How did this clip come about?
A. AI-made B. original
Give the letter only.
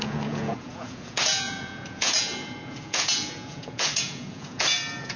A